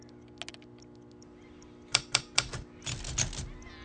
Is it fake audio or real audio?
real